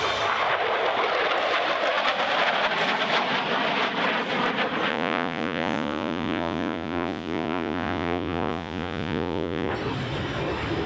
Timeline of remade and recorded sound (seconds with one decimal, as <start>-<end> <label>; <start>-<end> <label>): 0.0-4.9 recorded; 4.9-9.7 remade; 9.7-10.9 recorded